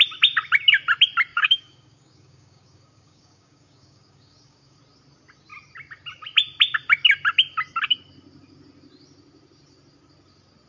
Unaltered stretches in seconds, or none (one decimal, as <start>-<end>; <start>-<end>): 0.0-1.3; 4.8-10.7